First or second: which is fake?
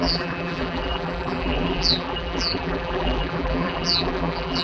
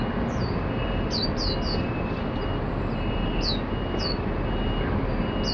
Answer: first